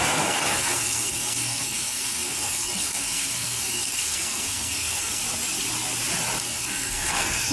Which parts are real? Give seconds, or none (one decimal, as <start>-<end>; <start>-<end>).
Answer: 5.2-6.4